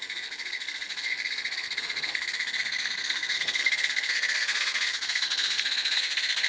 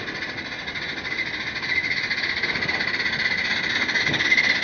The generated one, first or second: first